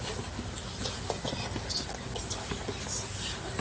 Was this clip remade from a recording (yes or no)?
no